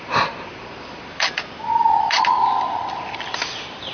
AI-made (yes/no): yes